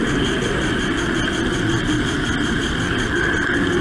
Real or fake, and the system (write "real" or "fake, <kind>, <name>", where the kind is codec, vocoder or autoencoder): real